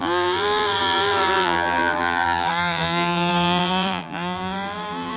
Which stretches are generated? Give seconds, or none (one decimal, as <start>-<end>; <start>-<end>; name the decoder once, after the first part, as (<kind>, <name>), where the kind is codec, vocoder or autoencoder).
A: 0.0-5.2 (vocoder, BigVGAN v2)